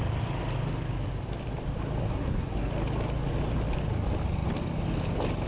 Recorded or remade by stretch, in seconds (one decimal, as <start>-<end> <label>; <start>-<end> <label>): 0.0-2.0 recorded; 2.0-2.7 remade; 2.7-5.5 recorded